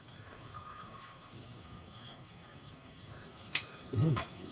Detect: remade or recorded remade